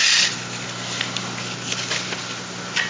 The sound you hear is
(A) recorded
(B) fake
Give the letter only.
A